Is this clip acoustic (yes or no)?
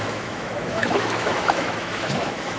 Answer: no